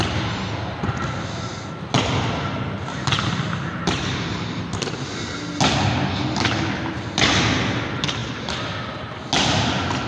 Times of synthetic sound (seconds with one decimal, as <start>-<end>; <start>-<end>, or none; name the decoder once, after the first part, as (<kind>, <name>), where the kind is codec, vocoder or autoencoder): none

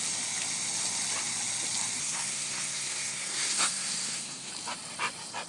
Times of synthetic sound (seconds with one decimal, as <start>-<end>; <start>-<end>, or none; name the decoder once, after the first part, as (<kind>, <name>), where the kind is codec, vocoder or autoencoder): 2.0-4.5 (codec, SNAC)

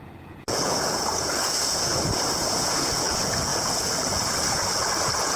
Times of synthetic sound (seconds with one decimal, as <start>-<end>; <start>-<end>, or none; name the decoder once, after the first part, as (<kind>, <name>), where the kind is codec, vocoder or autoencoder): 0.0-1.9 (vocoder, Vocos); 2.4-5.4

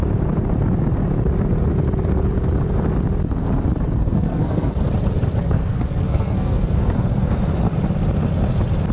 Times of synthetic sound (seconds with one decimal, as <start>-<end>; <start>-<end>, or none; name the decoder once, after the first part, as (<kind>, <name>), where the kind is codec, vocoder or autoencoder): 4.0-4.8 (codec, SNAC); 5.4-7.3

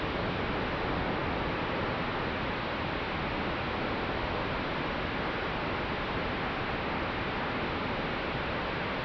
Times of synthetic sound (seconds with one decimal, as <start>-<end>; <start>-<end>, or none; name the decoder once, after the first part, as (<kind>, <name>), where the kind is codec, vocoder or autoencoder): none

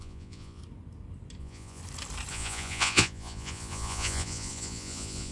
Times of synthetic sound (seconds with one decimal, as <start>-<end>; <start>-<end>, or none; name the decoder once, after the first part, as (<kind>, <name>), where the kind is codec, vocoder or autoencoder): 0.0-0.6 (vocoder, Vocos); 1.4-1.8; 2.3-5.3